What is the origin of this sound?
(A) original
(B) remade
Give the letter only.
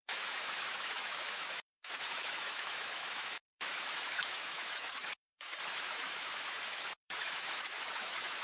B